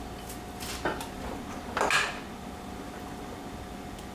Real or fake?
real